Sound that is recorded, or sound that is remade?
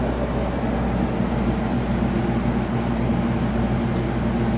recorded